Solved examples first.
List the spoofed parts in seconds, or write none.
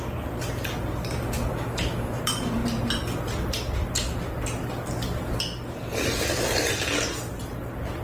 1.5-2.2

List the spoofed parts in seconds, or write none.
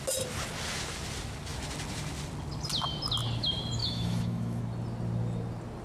3.8-4.6